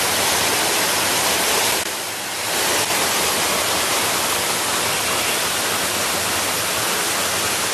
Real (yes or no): yes